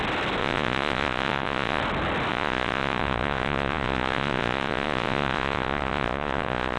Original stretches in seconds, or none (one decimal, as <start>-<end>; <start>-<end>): 0.0-0.4; 1.8-2.3